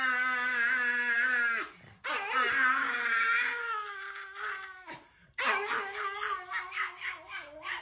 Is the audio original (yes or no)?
yes